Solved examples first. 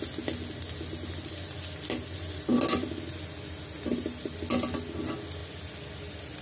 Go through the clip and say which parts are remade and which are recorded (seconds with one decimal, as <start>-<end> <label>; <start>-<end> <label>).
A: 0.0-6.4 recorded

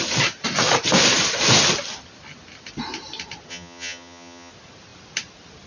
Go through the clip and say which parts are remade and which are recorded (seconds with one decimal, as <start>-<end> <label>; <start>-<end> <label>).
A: 0.0-3.5 recorded; 3.5-4.5 remade; 4.5-5.7 recorded

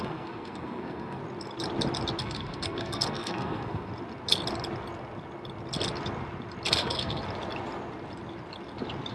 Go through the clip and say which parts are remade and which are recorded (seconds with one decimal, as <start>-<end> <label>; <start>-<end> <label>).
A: 0.0-1.2 remade; 1.2-2.2 recorded; 2.2-3.9 remade; 3.9-6.7 recorded; 6.7-7.2 remade; 7.2-9.1 recorded

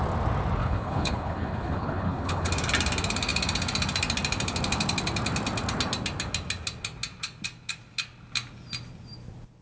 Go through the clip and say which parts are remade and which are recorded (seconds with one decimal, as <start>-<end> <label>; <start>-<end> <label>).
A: 0.0-0.6 recorded; 0.6-2.5 remade; 2.5-9.6 recorded

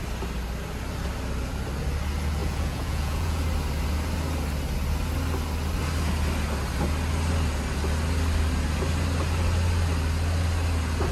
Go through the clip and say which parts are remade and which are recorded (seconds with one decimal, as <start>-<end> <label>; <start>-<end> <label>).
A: 0.0-2.4 recorded; 2.4-3.4 remade; 3.4-11.1 recorded

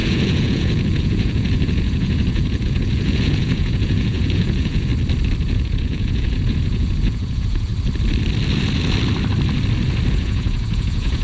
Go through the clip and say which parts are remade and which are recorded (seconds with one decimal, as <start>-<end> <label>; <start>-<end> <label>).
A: 0.0-4.9 remade; 4.9-5.4 recorded; 5.4-7.7 remade; 7.7-10.1 recorded; 10.1-11.2 remade

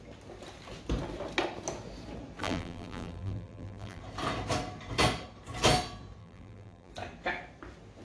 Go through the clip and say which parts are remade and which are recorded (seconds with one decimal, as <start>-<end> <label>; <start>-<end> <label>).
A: 0.0-2.4 recorded; 2.4-4.0 remade; 4.0-6.2 recorded; 6.2-6.9 remade; 6.9-8.0 recorded